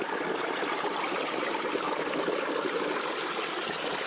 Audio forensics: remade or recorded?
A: recorded